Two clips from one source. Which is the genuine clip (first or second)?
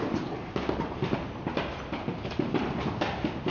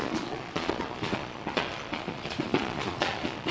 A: first